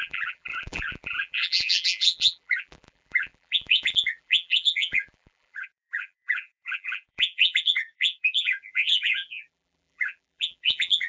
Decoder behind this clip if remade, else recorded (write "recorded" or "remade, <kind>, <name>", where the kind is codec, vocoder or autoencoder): remade, vocoder, BigVGAN v2